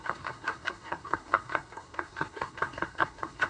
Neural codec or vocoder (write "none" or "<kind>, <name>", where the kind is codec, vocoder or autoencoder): codec, SNAC